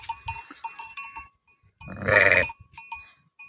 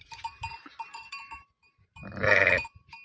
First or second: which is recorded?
first